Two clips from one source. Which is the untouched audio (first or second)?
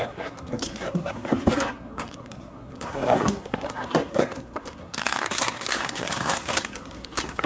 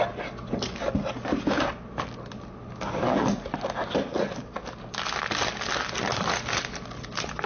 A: second